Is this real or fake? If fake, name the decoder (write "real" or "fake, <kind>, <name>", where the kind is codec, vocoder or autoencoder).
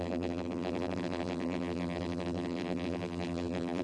fake, vocoder, BigVGAN v2